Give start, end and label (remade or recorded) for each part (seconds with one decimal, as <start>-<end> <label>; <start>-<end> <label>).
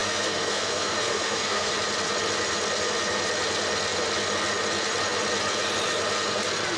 0.0-1.7 remade; 1.7-6.8 recorded